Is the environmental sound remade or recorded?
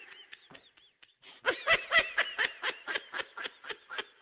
recorded